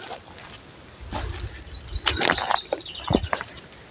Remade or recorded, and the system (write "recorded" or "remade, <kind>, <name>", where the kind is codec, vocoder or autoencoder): recorded